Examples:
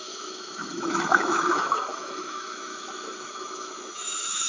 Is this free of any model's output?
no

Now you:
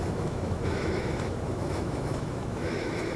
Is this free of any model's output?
no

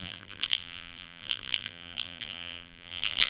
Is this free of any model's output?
no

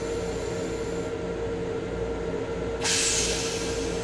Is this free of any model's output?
yes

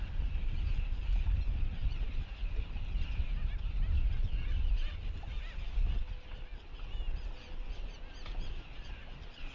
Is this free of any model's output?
yes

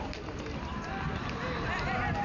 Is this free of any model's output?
yes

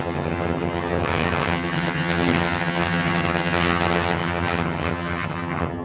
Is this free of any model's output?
no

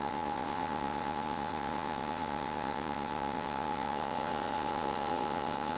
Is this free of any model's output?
no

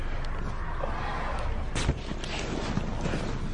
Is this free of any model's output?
yes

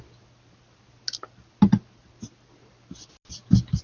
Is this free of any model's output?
yes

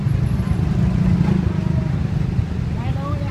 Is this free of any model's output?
yes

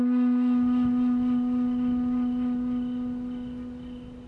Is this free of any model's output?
yes